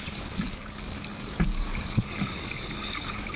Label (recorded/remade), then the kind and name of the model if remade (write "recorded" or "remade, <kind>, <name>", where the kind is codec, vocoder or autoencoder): remade, codec, DAC